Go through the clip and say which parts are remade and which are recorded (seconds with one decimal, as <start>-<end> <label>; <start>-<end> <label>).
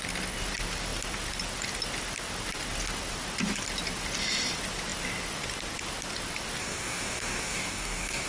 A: 0.0-6.6 recorded; 6.6-8.3 remade